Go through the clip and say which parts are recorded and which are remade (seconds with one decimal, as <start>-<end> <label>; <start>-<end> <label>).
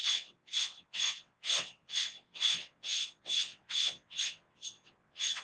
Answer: 0.0-5.4 remade